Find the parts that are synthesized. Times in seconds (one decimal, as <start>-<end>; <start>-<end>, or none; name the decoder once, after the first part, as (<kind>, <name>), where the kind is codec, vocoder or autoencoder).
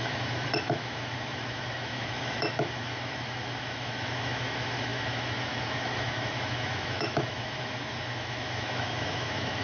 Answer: 0.0-9.6 (autoencoder, DAC-VAE)